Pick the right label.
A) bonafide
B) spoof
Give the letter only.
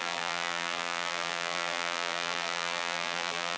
B